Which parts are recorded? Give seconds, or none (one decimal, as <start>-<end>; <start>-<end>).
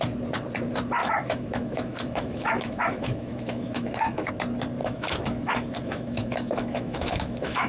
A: 0.0-1.0; 4.3-4.8